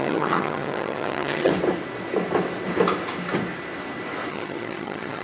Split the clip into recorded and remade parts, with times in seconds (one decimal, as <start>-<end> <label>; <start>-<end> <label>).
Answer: 0.0-1.5 remade; 1.5-4.3 recorded; 4.3-5.2 remade